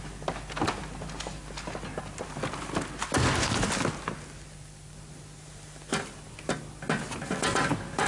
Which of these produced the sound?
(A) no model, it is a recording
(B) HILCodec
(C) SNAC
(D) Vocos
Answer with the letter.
A